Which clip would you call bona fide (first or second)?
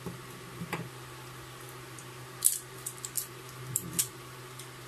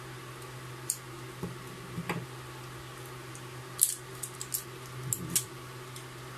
second